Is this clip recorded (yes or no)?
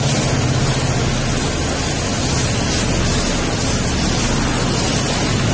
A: yes